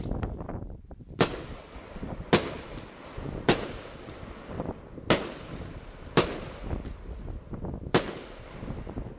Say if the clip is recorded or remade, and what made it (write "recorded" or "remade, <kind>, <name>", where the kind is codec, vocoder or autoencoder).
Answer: recorded